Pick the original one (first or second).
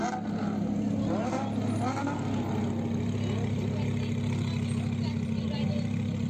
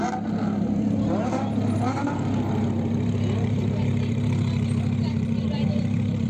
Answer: first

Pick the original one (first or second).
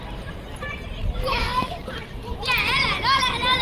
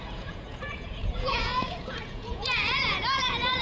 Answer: first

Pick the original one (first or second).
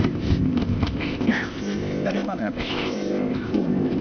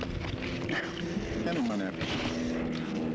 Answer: second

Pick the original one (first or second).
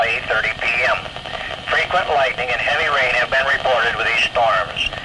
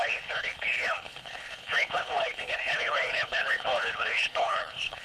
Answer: first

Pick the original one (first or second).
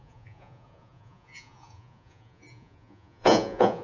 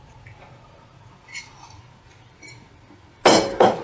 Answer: second